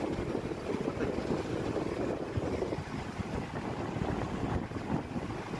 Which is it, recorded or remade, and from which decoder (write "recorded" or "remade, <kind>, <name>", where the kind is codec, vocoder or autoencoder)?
recorded